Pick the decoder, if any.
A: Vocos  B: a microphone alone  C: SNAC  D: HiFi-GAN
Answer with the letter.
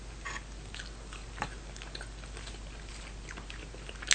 B